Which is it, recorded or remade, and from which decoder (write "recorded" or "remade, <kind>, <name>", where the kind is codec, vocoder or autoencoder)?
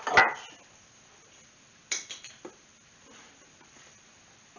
recorded